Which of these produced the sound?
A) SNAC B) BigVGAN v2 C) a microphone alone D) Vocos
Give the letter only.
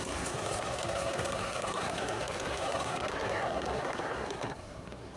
A